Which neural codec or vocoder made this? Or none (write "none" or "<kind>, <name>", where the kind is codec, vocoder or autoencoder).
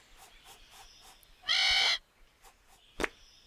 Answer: none